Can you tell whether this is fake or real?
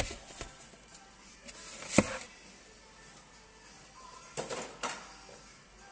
real